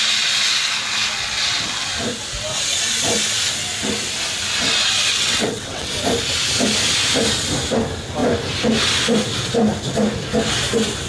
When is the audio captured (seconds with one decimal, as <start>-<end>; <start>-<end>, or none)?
0.0-5.1; 5.9-11.1